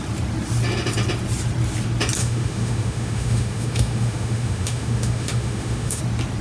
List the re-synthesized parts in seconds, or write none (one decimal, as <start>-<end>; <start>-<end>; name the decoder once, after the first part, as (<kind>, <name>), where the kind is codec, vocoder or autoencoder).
2.2-6.0 (autoencoder, DAC-VAE)